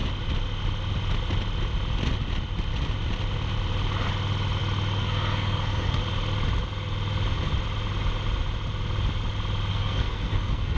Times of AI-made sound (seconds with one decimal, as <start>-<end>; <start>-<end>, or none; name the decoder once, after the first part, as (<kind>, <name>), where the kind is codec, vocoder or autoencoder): 5.0-6.0 (codec, SNAC); 9.7-10.8